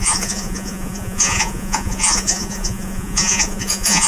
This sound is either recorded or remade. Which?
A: remade